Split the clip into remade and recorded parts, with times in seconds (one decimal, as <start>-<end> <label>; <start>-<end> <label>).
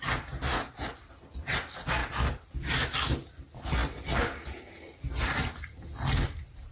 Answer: 0.0-6.7 recorded